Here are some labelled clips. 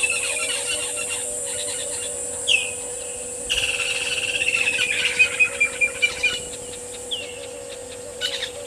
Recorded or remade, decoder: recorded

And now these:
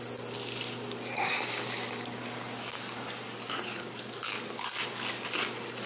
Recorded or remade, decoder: recorded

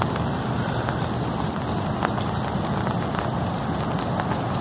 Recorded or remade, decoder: recorded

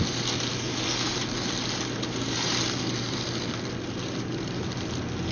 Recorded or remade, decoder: recorded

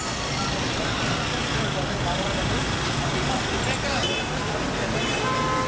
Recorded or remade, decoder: recorded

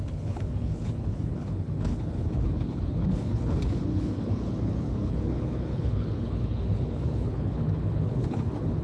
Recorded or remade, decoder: remade, codec, HILCodec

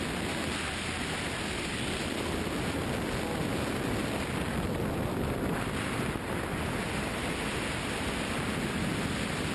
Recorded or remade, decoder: recorded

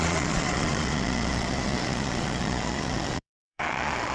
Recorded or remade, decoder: remade, vocoder, Vocos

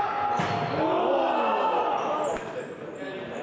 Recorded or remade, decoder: recorded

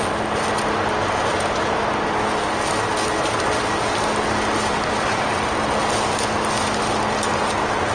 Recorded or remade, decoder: recorded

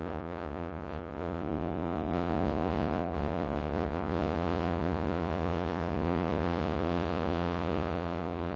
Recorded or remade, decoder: remade, vocoder, Vocos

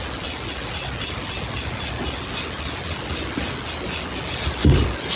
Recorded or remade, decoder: recorded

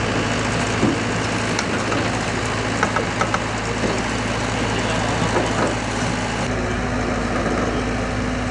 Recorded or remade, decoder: recorded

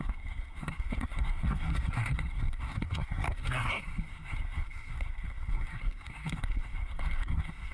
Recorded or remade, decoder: remade, codec, SNAC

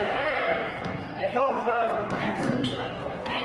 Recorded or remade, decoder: remade, codec, SNAC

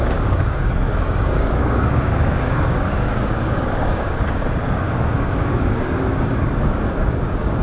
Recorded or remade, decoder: remade, codec, DAC